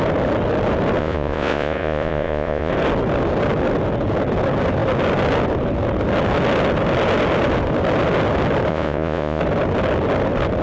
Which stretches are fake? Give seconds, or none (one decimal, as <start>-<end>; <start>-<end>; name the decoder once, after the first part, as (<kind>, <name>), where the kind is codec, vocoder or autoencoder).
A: 1.0-2.7 (vocoder, Vocos); 8.7-9.4